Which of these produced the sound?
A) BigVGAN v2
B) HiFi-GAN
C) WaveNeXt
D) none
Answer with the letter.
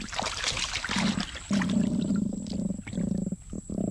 D